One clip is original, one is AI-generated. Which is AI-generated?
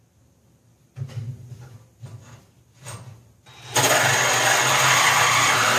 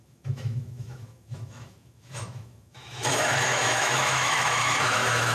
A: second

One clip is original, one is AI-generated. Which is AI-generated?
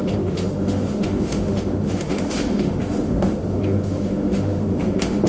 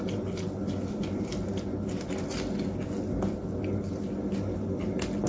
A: first